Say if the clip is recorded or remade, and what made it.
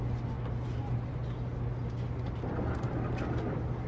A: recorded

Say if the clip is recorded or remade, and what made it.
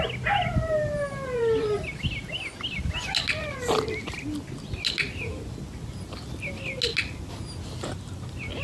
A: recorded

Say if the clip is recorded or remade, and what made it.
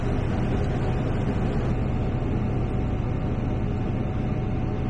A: recorded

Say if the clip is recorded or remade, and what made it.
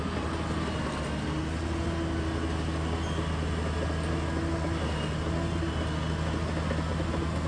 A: recorded